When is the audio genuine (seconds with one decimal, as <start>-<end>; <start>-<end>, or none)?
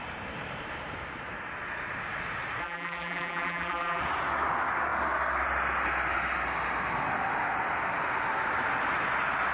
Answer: 0.0-2.6; 4.0-9.5